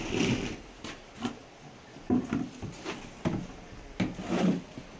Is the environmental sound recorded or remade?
recorded